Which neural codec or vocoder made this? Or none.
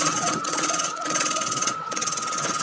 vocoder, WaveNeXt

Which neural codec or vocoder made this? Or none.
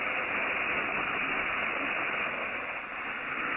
none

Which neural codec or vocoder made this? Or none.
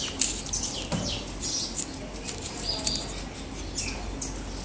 none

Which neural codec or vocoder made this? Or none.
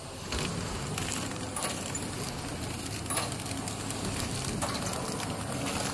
none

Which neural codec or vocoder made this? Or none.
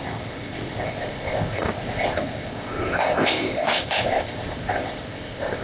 codec, ZipCodec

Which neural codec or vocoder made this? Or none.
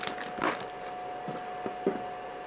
none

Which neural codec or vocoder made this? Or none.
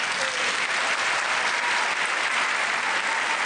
none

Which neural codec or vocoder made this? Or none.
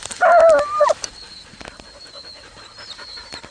none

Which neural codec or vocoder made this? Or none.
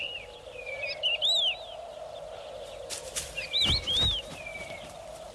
none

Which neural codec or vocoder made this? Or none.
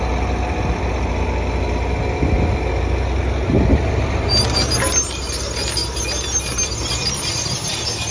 none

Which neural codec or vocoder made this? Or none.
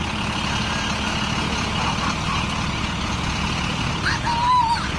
none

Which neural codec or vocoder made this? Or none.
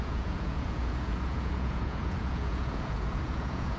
vocoder, Vocos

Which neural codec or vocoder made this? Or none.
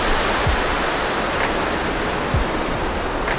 none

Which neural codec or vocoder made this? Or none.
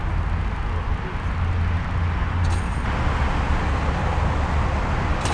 none